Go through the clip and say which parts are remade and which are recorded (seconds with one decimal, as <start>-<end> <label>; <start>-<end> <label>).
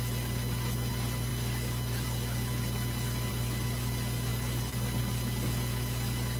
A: 0.0-6.4 recorded